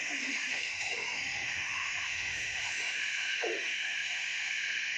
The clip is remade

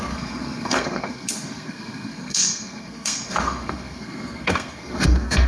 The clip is remade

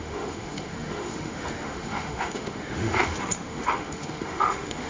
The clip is remade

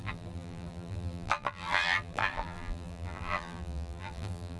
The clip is remade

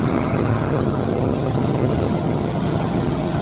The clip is remade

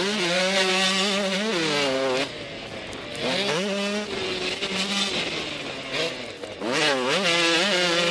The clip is recorded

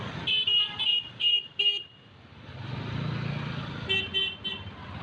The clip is recorded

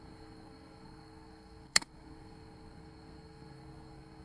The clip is remade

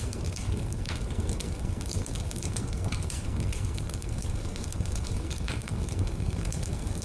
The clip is remade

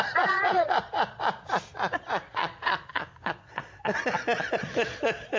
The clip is remade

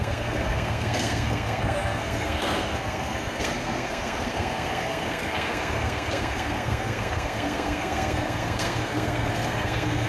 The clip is remade